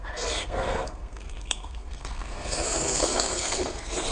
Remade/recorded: remade